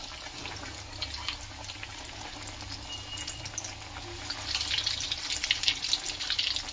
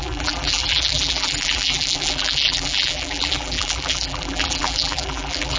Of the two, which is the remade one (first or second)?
second